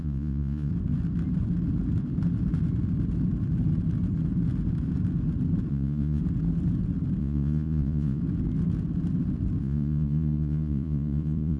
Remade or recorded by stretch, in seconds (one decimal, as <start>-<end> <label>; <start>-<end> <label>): 0.0-0.7 remade; 0.7-5.7 recorded; 5.7-6.2 remade; 6.2-7.2 recorded; 7.2-8.2 remade; 8.2-9.6 recorded; 9.6-11.6 remade